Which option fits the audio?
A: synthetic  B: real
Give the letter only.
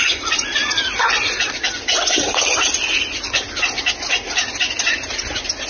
B